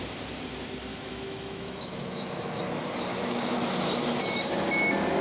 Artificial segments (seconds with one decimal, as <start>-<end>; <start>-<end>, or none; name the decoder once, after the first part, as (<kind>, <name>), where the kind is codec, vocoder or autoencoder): 0.9-2.6 (autoencoder, DAC-VAE); 3.1-3.7